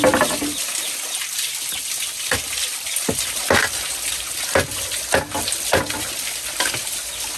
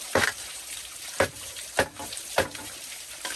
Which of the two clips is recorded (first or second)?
first